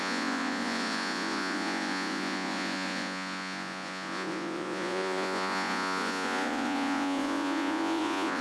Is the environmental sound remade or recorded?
remade